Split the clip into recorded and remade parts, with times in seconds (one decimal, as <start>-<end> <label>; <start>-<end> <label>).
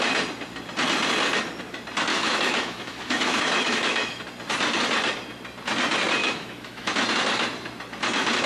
0.0-2.1 recorded; 2.1-4.2 remade; 4.2-6.2 recorded; 6.2-6.9 remade; 6.9-8.5 recorded